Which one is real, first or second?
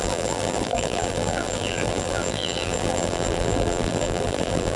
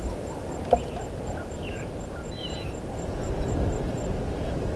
second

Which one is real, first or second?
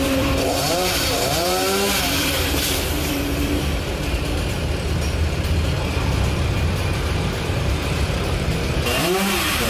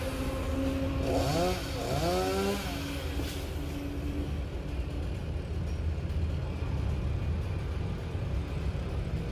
second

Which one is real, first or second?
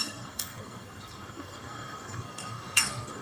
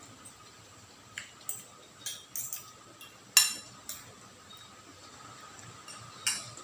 second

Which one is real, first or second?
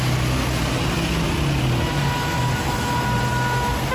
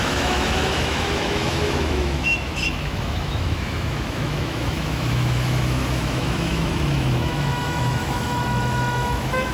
first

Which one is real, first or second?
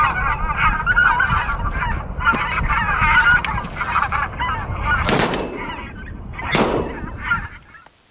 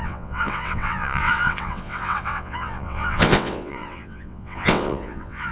first